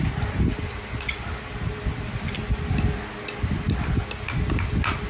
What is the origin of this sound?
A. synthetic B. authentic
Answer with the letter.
B